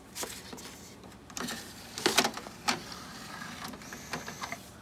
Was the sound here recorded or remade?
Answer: recorded